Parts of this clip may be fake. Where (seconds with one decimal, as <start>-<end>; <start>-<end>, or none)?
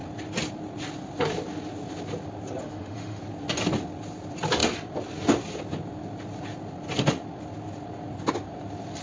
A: 2.6-3.2